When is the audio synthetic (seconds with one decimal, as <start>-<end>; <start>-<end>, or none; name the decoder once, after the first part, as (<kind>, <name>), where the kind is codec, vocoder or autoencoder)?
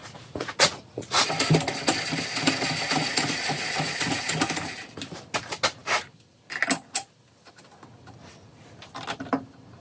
0.0-1.2 (vocoder, Vocos); 3.0-4.3